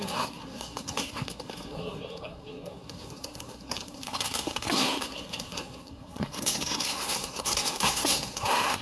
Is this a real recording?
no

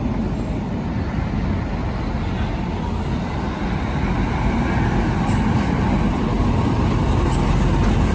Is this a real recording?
yes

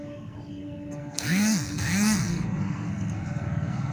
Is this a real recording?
no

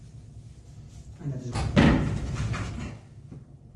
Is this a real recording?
yes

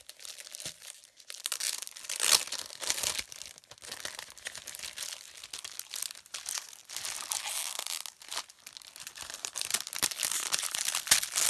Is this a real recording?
yes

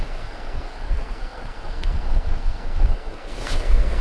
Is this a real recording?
no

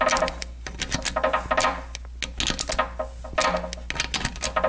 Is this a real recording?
yes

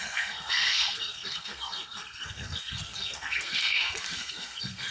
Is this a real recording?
no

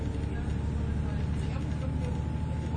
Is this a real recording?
yes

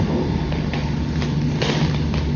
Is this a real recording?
yes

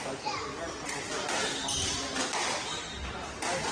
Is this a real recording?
yes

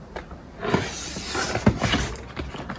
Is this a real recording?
yes